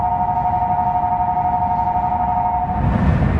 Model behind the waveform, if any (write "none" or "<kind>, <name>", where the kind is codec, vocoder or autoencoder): none